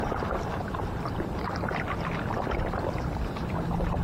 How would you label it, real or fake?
real